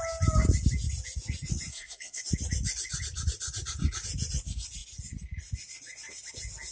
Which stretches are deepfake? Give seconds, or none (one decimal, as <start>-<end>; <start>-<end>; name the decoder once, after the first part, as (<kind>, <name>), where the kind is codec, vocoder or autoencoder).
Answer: 1.7-2.2 (codec, SNAC)